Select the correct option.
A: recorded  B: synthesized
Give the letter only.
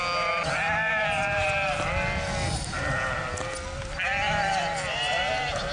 A